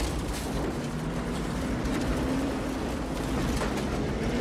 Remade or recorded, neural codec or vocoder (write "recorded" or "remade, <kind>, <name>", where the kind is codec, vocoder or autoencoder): remade, vocoder, BigVGAN v2